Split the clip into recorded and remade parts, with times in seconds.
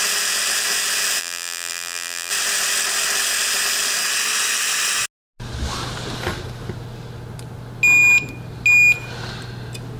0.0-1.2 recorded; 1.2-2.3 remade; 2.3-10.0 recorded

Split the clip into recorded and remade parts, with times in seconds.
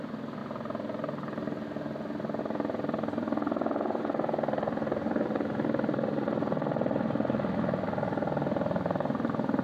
0.0-0.4 remade; 0.4-2.4 recorded; 2.4-9.6 remade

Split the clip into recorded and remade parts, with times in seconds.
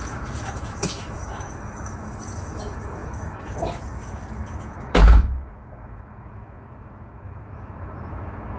0.0-8.6 remade